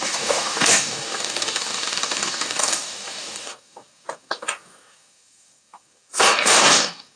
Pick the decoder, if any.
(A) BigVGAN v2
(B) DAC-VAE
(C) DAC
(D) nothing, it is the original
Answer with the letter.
C